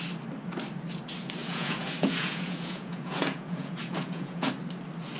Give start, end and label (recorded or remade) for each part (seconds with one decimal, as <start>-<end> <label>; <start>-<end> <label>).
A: 0.0-1.4 recorded; 1.4-4.5 remade; 4.5-5.2 recorded